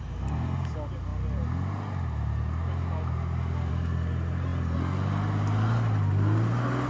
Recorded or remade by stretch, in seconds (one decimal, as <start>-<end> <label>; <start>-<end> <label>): 0.0-6.9 recorded